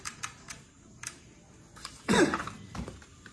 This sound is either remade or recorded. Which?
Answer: remade